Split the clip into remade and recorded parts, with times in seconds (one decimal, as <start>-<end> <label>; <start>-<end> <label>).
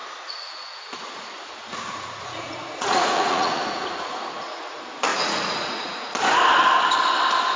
0.0-4.6 remade; 4.6-5.1 recorded; 5.1-6.1 remade; 6.1-7.6 recorded